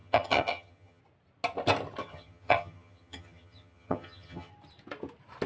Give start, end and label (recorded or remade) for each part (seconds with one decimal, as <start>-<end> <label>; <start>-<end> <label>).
0.0-1.0 remade; 1.0-2.0 recorded; 2.0-4.5 remade; 4.5-5.5 recorded